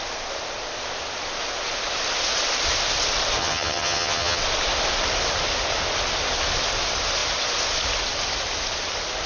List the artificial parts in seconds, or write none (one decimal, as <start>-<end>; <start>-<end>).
3.4-4.4